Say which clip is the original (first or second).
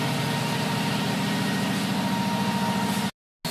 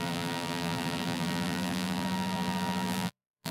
first